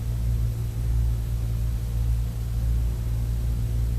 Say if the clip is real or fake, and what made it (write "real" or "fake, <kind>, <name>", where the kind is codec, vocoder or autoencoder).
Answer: real